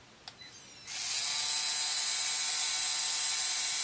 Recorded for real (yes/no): yes